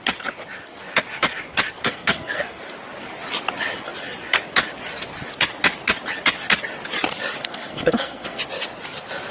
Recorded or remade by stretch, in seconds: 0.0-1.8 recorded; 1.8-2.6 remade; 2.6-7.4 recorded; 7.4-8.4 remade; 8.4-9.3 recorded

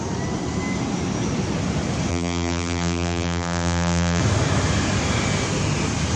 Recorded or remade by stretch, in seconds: 0.0-2.1 recorded; 2.1-4.2 remade; 4.2-6.2 recorded

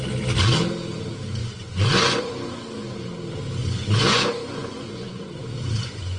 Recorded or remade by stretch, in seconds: 0.0-1.4 recorded; 1.4-2.3 remade; 2.3-3.6 recorded; 3.6-6.2 remade